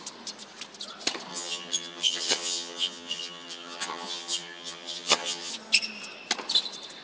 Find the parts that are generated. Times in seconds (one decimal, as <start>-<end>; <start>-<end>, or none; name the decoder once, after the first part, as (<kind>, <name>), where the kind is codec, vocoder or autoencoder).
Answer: 1.3-5.5 (vocoder, HiFi-GAN)